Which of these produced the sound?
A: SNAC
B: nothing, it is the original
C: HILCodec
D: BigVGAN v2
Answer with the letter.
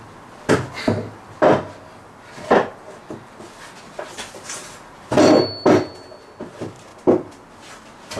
B